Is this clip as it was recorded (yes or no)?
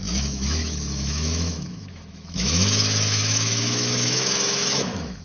no